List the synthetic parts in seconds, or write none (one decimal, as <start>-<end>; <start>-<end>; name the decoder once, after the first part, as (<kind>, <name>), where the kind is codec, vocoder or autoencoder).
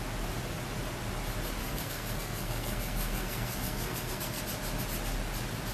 1.6-4.4 (codec, SNAC)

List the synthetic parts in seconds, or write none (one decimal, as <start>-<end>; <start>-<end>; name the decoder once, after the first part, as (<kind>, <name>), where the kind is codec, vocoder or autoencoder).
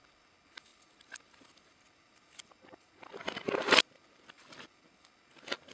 none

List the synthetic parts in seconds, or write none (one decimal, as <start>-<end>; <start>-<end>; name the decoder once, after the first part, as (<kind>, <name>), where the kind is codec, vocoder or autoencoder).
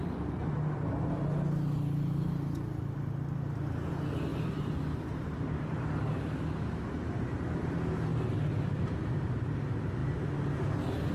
none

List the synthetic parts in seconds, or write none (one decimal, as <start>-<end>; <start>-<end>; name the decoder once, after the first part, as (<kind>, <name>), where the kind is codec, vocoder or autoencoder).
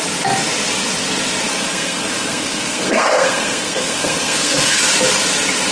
1.5-4.8 (codec, SNAC)